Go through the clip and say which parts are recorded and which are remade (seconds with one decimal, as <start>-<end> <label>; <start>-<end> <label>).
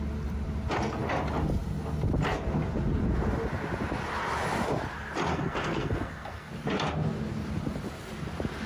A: 0.0-5.3 recorded; 5.3-6.5 remade; 6.5-8.7 recorded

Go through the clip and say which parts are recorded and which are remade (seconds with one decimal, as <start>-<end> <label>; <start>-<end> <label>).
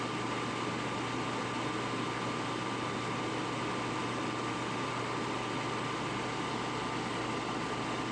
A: 0.0-8.1 recorded